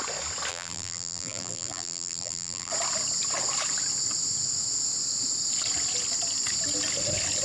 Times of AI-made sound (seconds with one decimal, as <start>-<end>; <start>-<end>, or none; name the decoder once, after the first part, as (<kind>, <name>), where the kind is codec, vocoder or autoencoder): 0.5-2.7 (vocoder, BigVGAN v2)